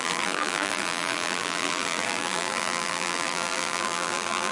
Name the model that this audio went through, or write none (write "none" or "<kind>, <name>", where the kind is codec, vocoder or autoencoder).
vocoder, BigVGAN v2